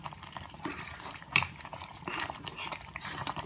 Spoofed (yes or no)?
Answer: yes